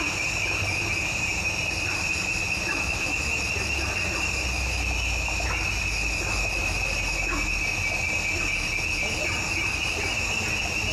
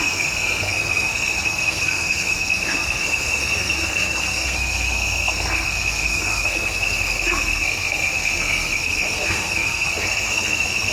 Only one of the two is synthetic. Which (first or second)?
second